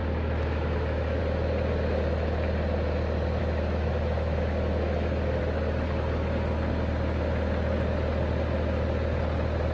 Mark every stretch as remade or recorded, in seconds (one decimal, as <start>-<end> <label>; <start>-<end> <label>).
0.0-1.2 remade; 1.2-3.4 recorded; 3.4-5.4 remade; 5.4-9.7 recorded